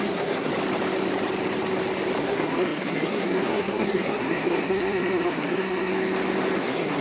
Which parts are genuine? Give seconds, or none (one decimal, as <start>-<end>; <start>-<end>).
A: 0.5-2.2; 5.9-6.6